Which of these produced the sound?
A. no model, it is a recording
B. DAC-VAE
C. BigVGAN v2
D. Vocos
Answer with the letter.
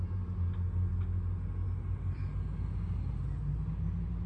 A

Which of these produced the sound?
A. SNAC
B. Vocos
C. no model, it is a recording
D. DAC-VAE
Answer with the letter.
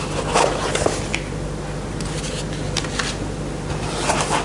C